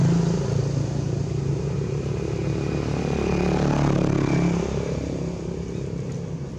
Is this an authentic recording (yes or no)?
yes